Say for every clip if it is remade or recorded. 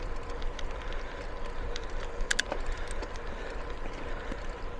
recorded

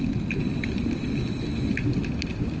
recorded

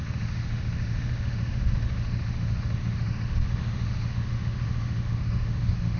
remade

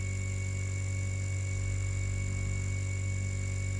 recorded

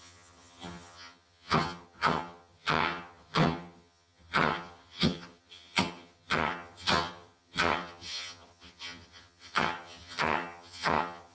remade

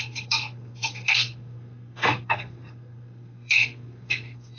remade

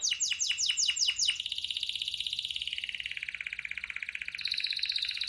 recorded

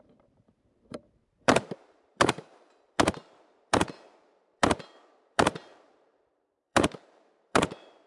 remade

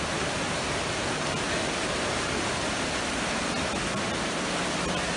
recorded